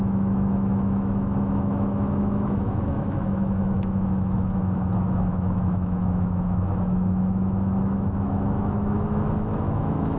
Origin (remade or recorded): remade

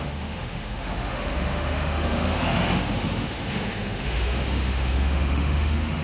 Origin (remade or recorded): remade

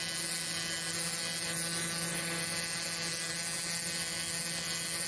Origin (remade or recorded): recorded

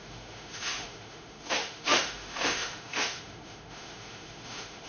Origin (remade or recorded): remade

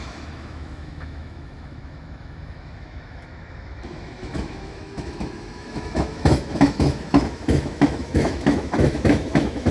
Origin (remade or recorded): remade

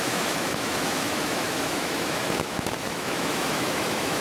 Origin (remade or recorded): remade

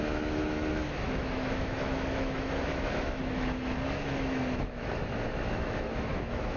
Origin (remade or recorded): remade